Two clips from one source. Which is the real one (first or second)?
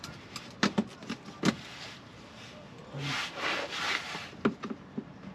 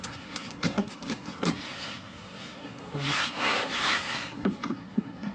first